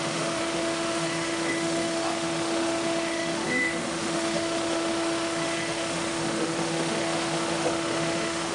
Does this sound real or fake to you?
fake